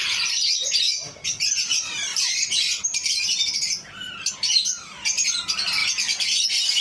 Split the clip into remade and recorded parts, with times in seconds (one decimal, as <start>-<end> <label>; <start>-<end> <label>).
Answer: 0.0-0.9 recorded; 0.9-1.5 remade; 1.5-2.1 recorded; 2.1-4.3 remade; 4.3-6.8 recorded